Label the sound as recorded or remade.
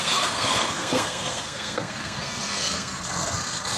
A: remade